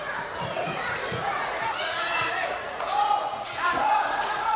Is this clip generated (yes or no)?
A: yes